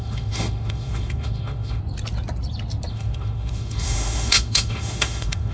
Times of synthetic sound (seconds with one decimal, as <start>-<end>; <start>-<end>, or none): 0.0-1.8; 2.9-5.5